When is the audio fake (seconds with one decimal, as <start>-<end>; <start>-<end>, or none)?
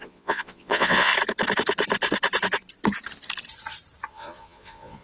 0.0-1.1; 4.1-5.0